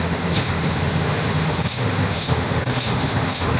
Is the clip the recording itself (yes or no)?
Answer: no